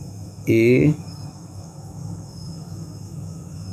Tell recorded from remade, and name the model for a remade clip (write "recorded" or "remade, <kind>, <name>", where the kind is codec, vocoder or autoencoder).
remade, autoencoder, DAC-VAE